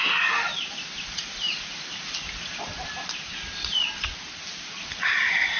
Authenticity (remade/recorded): recorded